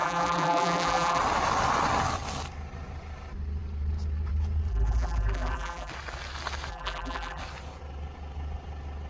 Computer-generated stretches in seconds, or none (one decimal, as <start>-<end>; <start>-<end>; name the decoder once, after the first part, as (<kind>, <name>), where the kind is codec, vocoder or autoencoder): 0.0-1.2 (vocoder, BigVGAN v2); 4.7-5.9; 6.7-7.4